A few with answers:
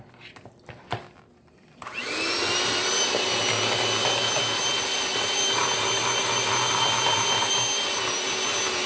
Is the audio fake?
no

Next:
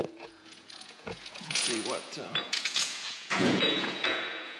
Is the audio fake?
yes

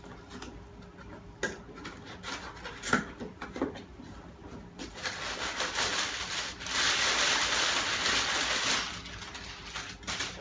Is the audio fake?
no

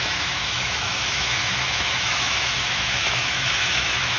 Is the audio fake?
yes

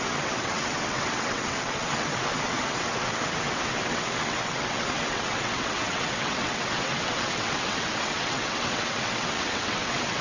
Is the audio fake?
yes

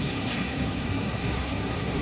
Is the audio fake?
yes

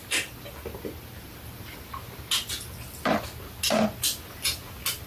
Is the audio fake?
no